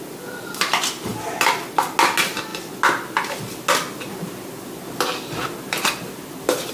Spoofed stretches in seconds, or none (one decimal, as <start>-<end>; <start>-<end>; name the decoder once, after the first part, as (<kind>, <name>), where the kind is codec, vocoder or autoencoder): none